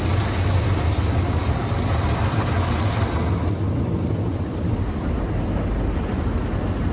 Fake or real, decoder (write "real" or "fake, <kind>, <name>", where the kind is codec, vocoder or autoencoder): real